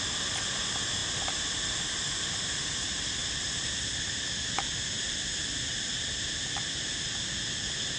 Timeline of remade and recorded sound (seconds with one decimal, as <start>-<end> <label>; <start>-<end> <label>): 0.0-1.0 recorded; 1.0-2.0 remade; 2.0-3.2 recorded; 3.2-3.8 remade; 3.8-8.0 recorded